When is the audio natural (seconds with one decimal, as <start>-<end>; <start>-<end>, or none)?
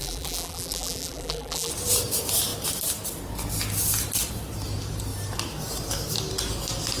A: 1.7-7.0